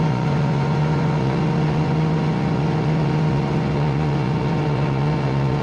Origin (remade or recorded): remade